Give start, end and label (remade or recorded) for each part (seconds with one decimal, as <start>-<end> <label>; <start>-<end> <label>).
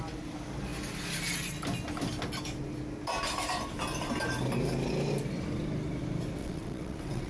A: 0.0-6.4 recorded; 6.4-7.3 remade